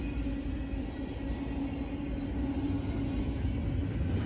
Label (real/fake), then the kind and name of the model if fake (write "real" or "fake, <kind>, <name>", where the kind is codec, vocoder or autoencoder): real